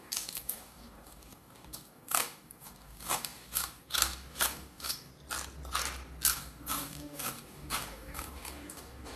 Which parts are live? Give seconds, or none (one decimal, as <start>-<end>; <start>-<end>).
5.1-6.3

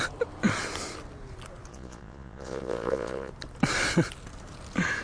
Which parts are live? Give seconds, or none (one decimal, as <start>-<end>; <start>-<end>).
0.0-1.7; 3.3-5.0

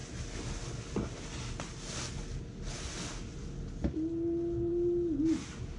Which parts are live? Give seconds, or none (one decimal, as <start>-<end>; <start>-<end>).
0.0-5.8

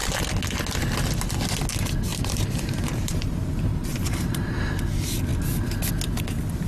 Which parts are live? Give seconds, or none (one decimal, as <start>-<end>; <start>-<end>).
0.0-2.1; 4.6-6.7